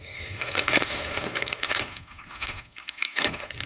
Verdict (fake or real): fake